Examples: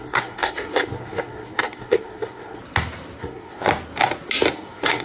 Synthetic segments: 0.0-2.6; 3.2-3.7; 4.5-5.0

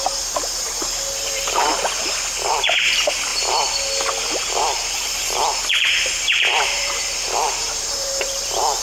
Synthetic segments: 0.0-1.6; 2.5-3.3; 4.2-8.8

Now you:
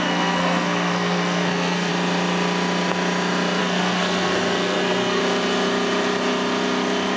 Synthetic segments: 0.0-1.9; 3.6-5.2

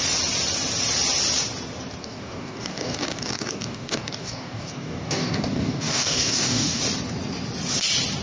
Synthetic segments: 2.0-6.8

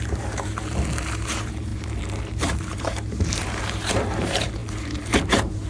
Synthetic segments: 0.0-5.7

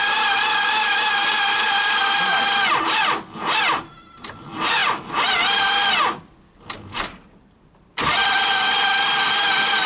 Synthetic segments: 0.0-2.0; 3.8-9.9